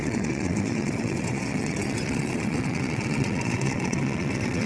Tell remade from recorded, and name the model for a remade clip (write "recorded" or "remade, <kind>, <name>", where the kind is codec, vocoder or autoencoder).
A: remade, vocoder, WaveNeXt